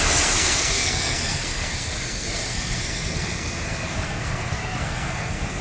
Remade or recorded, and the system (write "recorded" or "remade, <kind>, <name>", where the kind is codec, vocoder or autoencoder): remade, codec, SNAC